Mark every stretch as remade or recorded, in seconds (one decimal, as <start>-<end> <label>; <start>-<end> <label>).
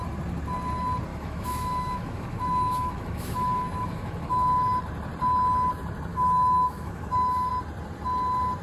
0.0-1.1 recorded; 1.1-4.8 remade; 4.8-6.1 recorded; 6.1-7.5 remade; 7.5-8.6 recorded